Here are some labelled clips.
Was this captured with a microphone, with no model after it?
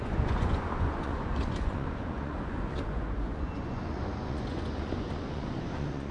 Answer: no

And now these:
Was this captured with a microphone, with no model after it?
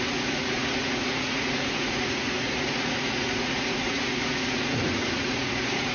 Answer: no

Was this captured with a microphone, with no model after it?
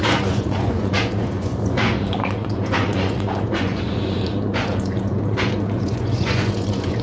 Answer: no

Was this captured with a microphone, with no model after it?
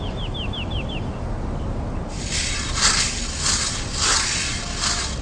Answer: yes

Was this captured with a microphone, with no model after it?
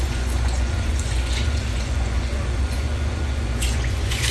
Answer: no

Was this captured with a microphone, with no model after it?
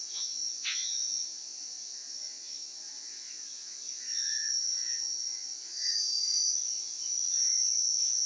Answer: no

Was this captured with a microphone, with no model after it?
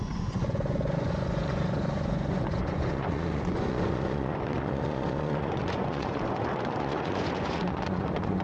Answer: no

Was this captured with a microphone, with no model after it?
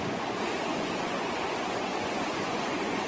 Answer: no